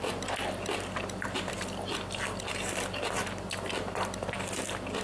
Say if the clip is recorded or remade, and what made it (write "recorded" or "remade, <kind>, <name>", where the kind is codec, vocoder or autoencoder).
recorded